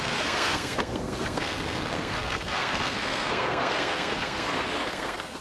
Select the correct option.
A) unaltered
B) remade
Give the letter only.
B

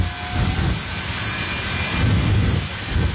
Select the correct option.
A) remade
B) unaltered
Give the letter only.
B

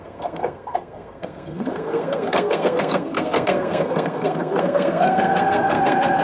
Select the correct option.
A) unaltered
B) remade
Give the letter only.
B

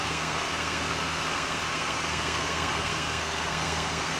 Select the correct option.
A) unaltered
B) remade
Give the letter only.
B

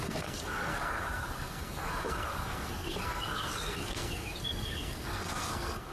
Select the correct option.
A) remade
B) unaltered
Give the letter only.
A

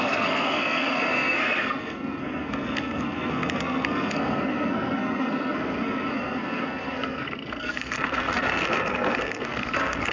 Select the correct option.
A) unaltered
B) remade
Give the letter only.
B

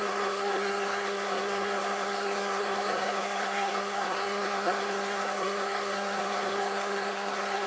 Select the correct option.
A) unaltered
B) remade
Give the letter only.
B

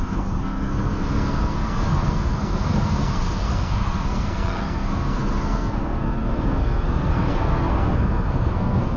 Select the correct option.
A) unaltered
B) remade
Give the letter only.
B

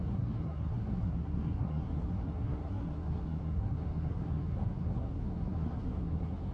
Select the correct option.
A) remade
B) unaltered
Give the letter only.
A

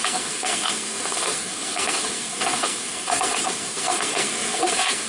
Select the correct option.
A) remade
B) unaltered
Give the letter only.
A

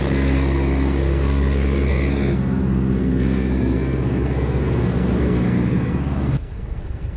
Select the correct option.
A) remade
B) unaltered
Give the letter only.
A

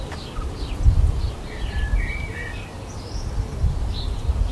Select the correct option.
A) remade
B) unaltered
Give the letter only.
B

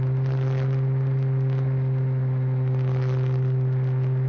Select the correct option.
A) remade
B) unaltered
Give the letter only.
B